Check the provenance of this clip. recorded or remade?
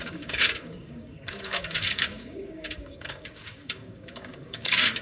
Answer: remade